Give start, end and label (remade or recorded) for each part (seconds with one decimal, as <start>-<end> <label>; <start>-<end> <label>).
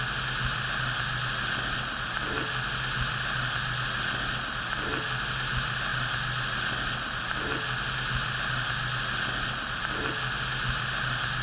0.0-11.4 recorded